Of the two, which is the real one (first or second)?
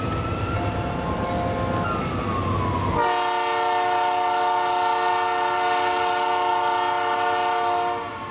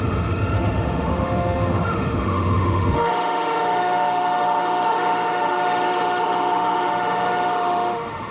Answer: first